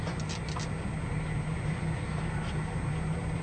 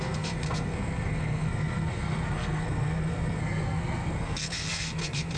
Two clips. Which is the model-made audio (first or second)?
second